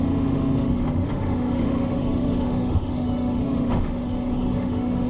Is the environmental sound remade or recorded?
remade